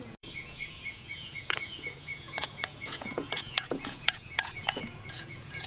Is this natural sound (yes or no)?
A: no